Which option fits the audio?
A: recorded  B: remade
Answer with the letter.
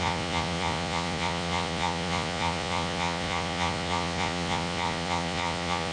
B